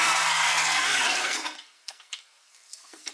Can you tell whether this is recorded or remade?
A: remade